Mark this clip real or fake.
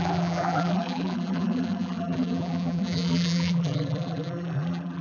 fake